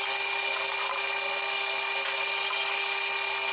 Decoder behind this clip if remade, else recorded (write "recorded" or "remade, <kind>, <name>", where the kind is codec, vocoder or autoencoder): recorded